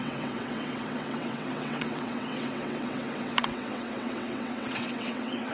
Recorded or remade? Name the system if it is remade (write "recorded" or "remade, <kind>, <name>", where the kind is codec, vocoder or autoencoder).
remade, vocoder, WaveNeXt